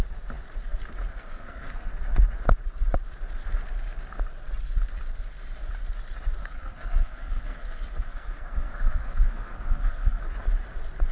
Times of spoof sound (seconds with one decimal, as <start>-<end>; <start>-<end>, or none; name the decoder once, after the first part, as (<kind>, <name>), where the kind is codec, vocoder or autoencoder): 1.1-1.9 (codec, SNAC); 6.4-10.2